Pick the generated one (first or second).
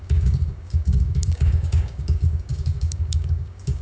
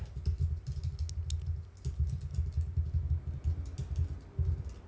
first